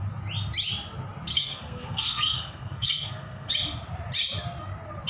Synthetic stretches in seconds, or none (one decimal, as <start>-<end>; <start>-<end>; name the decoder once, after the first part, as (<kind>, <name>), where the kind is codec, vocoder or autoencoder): 1.3-3.5 (codec, SNAC)

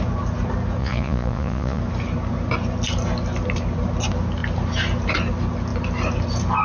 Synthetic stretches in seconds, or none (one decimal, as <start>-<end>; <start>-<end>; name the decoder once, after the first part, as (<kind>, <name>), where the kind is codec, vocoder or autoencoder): 0.8-1.8 (vocoder, Vocos)

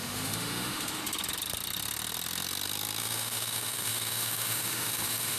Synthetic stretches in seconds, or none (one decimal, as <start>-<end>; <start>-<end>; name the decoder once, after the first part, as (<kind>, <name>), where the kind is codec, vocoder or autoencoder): 0.0-1.0 (autoencoder, DAC-VAE); 3.0-5.4

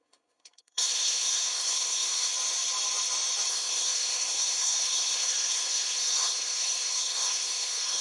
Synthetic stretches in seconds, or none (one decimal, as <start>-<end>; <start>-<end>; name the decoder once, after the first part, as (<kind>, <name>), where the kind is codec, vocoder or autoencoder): 0.0-2.3 (codec, SNAC); 3.5-8.0

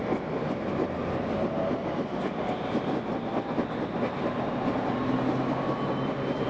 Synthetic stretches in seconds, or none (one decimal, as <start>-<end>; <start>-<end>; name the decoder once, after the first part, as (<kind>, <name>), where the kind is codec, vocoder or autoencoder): none